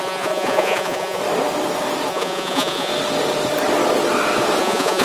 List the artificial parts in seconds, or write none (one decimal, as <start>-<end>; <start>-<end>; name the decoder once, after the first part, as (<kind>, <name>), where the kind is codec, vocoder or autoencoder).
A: 0.0-1.2 (vocoder, Vocos); 2.1-2.9; 4.6-5.0